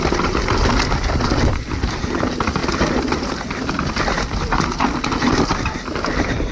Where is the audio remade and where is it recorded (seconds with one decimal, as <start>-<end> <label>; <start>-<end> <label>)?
0.0-6.5 recorded